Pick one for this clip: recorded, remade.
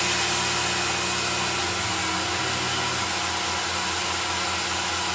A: recorded